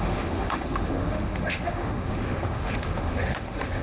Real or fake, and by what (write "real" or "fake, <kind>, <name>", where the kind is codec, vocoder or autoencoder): fake, autoencoder, DAC-VAE